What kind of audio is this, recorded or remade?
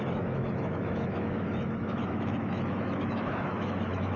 remade